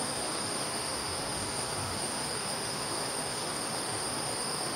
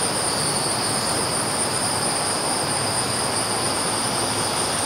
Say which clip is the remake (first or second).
first